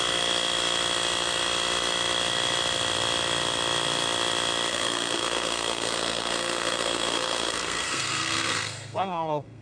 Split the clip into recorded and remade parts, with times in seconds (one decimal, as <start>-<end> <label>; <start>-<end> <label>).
0.0-4.7 recorded; 4.7-9.6 remade